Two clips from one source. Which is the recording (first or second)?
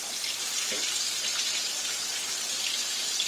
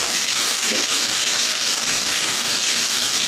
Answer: first